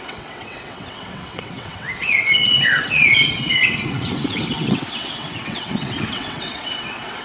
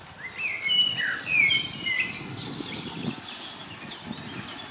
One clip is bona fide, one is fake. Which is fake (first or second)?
first